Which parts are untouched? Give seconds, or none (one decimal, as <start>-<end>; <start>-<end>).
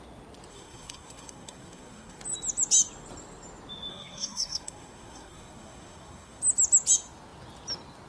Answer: 0.0-0.5; 2.2-3.9; 6.4-8.1